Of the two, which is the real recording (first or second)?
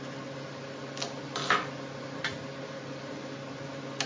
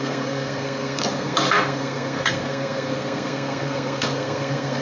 first